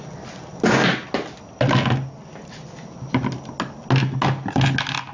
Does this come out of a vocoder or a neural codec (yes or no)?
no